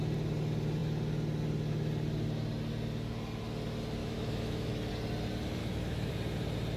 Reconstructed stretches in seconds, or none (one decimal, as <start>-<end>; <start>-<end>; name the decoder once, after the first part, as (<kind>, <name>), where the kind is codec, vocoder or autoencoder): 4.0-4.9 (autoencoder, DAC-VAE); 5.6-6.1